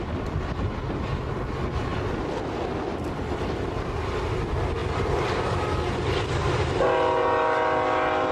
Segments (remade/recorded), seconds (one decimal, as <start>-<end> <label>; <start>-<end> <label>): 0.0-8.3 recorded